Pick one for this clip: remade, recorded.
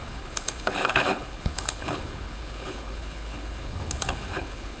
remade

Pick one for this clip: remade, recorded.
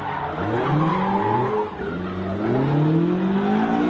recorded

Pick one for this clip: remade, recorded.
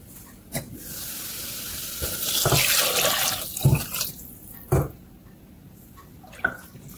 recorded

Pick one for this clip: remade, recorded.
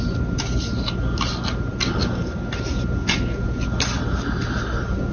recorded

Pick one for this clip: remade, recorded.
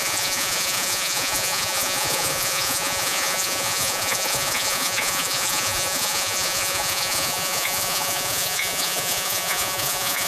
remade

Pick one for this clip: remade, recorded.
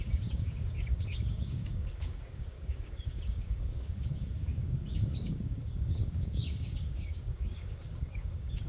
remade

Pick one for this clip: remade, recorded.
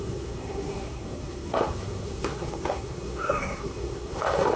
remade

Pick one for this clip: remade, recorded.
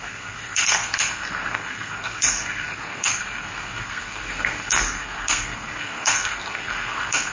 remade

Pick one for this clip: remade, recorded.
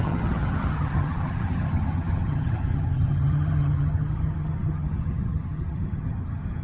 remade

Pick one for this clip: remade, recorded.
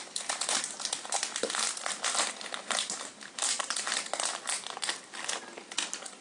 recorded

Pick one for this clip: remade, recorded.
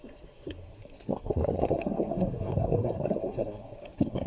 remade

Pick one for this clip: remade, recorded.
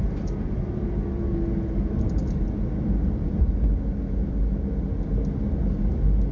recorded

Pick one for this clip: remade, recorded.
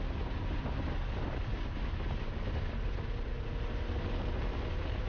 recorded